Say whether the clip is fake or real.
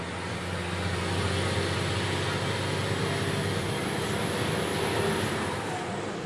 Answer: real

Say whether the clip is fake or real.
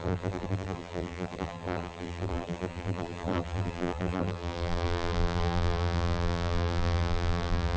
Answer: fake